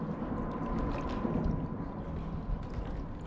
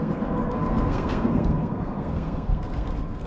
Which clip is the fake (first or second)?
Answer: second